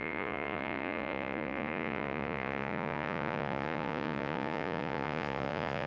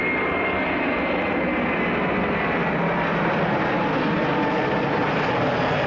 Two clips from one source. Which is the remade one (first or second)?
first